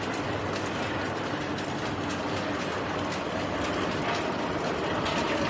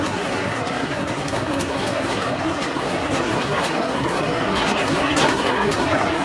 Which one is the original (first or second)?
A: first